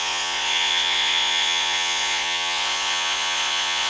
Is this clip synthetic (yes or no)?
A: yes